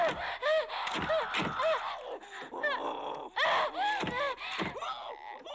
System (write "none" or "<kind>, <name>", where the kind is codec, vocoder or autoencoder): none